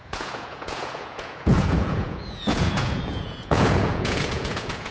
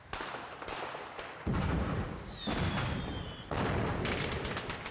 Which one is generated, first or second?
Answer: first